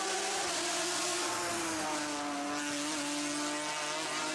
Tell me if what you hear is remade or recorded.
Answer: recorded